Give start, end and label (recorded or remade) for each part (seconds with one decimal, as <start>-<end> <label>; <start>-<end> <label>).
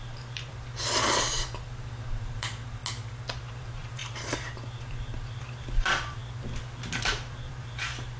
0.0-2.8 remade; 2.8-3.5 recorded; 3.5-6.2 remade; 6.2-6.9 recorded; 6.9-8.2 remade